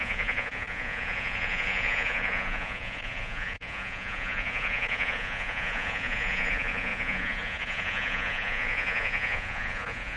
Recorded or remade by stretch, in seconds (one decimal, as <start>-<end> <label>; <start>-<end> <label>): 0.0-10.2 remade